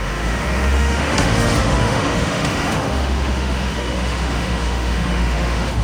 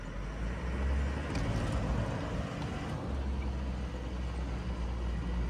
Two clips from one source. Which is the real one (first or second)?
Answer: second